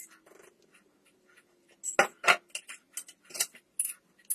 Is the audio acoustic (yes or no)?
yes